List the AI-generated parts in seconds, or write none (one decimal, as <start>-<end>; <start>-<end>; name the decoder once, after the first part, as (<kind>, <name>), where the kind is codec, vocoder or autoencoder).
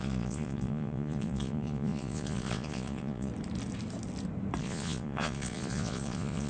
0.0-3.3 (vocoder, Vocos); 4.6-6.5